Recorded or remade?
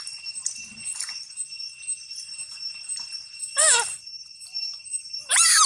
remade